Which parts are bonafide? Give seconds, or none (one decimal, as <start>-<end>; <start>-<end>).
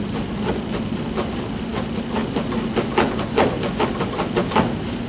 0.0-5.1